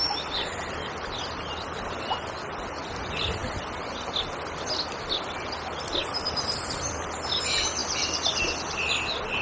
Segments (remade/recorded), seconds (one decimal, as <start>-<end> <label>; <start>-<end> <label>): 0.0-9.4 recorded

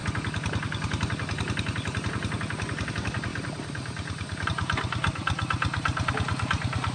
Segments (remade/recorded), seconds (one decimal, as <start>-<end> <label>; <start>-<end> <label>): 0.0-6.9 recorded

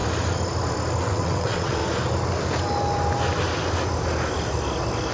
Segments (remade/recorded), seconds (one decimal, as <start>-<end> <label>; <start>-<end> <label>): 0.0-1.0 recorded; 1.0-1.8 remade; 1.8-5.1 recorded

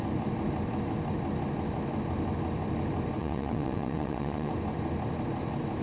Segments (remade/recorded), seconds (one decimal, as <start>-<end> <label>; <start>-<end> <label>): 0.0-3.2 recorded; 3.2-4.5 remade; 4.5-5.8 recorded

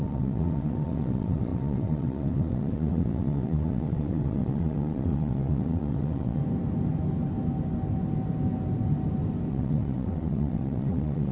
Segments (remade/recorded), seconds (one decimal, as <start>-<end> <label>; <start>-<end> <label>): 0.0-6.4 remade; 6.4-9.5 recorded; 9.5-11.3 remade